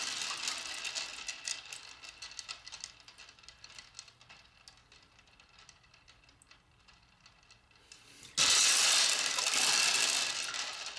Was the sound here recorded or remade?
recorded